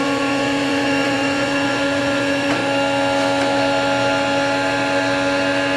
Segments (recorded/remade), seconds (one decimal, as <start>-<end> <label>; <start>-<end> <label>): 0.0-2.6 remade; 2.6-5.8 recorded